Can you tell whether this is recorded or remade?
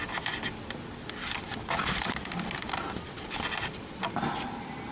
recorded